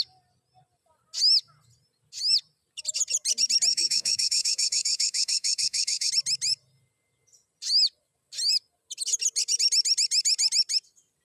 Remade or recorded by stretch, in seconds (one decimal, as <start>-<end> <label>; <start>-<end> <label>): 0.0-3.7 recorded; 3.7-6.1 remade; 6.1-11.2 recorded